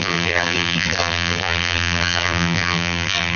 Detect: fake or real fake